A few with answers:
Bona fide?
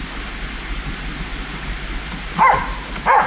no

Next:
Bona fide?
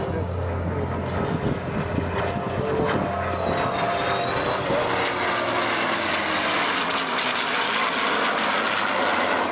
yes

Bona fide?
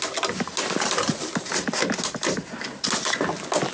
yes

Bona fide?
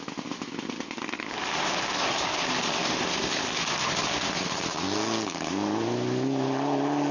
yes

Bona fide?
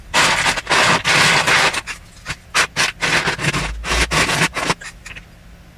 yes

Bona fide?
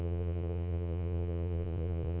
no